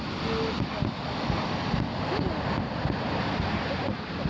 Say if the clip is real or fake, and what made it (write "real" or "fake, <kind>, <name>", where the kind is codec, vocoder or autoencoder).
real